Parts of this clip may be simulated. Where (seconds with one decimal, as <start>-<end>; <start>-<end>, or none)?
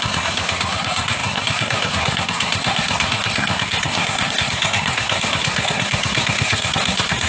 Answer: 0.0-7.3